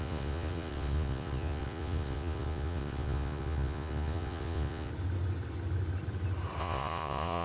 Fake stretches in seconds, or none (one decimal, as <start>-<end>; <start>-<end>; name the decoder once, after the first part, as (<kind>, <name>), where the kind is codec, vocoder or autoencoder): 0.0-4.9 (vocoder, Vocos); 6.6-7.4